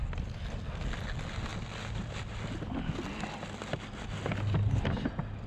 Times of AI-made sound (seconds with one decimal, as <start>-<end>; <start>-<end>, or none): none